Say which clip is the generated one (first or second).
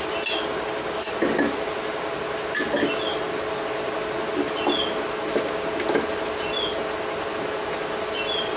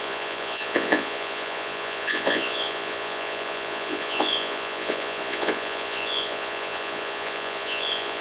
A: second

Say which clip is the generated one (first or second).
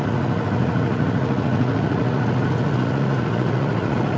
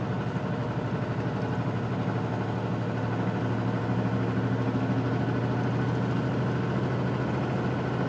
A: first